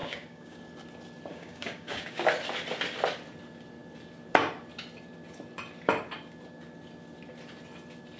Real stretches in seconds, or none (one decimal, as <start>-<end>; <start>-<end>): 0.6-1.3; 2.3-8.2